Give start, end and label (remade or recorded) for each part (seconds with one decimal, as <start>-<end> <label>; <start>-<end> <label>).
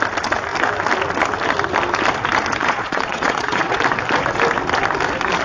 0.0-2.6 recorded; 2.6-3.8 remade; 3.8-5.4 recorded